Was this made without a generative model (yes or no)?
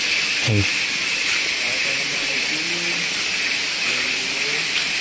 yes